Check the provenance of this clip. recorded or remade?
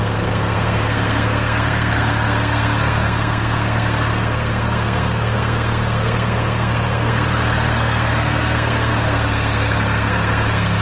remade